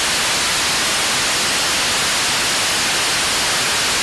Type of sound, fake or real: real